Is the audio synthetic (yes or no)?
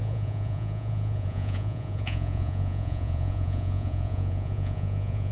yes